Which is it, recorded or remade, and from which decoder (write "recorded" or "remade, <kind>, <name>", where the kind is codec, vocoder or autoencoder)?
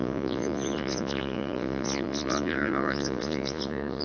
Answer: remade, vocoder, Vocos